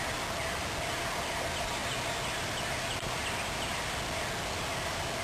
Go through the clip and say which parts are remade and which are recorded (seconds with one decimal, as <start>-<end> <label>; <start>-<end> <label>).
0.0-5.2 recorded